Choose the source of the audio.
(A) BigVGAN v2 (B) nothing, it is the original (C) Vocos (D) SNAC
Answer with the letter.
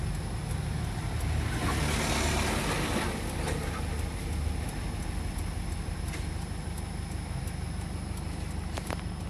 B